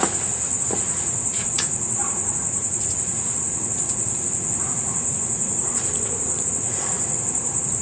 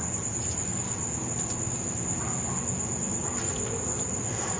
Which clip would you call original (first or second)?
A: second